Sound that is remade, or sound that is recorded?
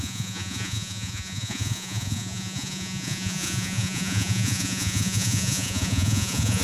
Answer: remade